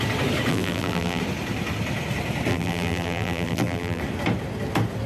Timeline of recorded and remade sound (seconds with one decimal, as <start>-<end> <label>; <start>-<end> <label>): 0.0-0.5 recorded; 0.5-1.2 remade; 1.2-2.5 recorded; 2.5-4.0 remade; 4.0-5.1 recorded